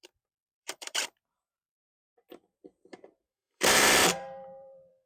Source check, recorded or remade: remade